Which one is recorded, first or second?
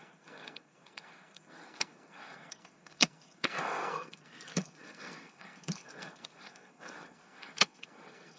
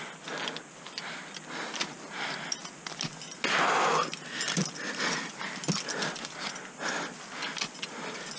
second